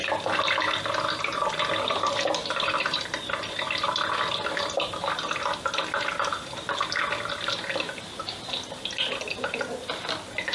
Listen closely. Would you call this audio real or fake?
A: real